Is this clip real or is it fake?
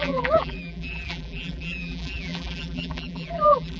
fake